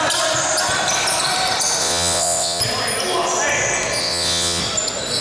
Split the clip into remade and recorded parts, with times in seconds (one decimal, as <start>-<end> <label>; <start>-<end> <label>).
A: 0.0-1.8 recorded; 1.8-2.6 remade; 2.6-4.0 recorded; 4.0-4.6 remade; 4.6-5.2 recorded